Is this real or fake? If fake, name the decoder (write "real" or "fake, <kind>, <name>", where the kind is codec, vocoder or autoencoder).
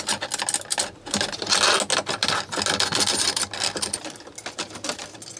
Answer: real